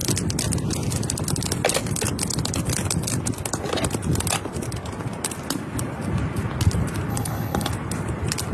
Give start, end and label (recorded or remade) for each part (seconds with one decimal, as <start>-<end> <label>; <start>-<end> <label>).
0.0-7.1 recorded; 7.1-7.7 remade; 7.7-8.5 recorded